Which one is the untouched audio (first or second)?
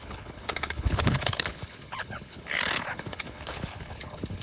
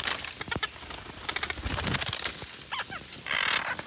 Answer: second